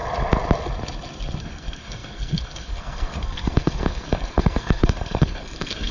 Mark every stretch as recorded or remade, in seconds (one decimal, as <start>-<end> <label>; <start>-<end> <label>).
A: 0.0-1.4 recorded; 1.4-5.9 remade